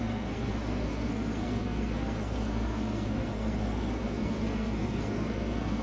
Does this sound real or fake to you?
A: fake